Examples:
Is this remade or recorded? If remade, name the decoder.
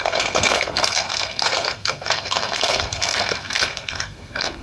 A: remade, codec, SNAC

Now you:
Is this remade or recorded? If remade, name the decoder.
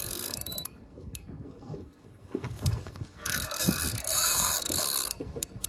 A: remade, codec, SNAC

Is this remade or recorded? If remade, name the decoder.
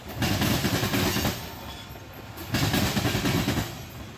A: recorded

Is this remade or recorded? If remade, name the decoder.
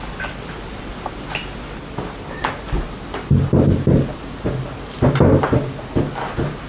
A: recorded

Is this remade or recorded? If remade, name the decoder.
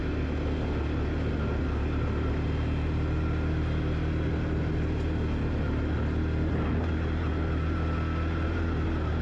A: recorded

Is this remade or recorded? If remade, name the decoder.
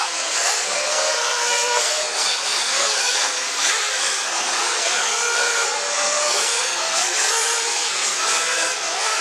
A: remade, codec, SNAC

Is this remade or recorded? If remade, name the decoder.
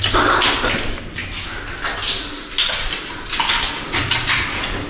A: recorded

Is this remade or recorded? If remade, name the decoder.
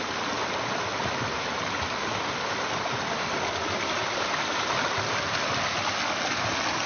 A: recorded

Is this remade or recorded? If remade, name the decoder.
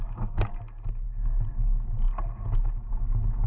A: recorded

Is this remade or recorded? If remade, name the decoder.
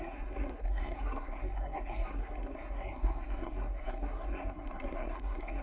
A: remade, codec, SNAC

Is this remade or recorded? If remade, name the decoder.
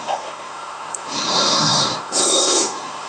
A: remade, codec, SNAC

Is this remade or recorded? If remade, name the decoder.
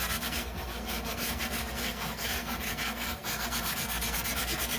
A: remade, codec, SNAC